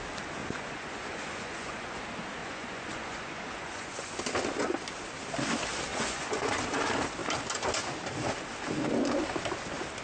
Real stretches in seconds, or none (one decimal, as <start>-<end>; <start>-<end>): 0.0-0.4; 2.0-2.4; 4.1-5.9; 6.5-10.0